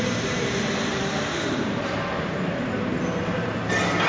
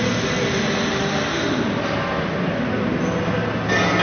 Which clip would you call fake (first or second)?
first